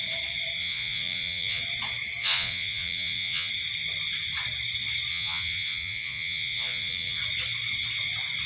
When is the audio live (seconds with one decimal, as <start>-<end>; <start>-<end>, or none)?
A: 0.0-0.6; 1.6-2.2; 3.5-5.1; 7.2-8.5